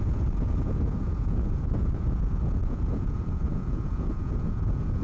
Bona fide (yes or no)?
no